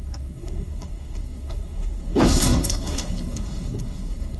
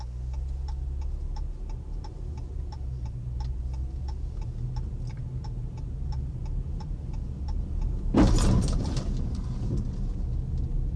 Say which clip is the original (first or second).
second